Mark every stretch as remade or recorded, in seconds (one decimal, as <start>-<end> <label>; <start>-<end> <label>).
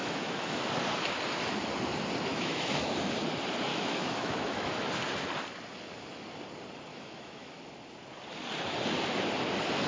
0.0-0.7 remade; 0.7-2.3 recorded; 2.3-3.0 remade; 3.0-3.7 recorded; 3.7-4.9 remade; 4.9-6.9 recorded; 6.9-7.6 remade; 7.6-9.9 recorded